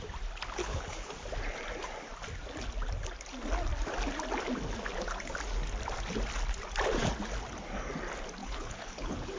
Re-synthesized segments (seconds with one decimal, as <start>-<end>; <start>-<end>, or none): 0.6-1.1; 8.4-9.4